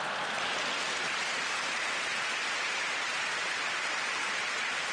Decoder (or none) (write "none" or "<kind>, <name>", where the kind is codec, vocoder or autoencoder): none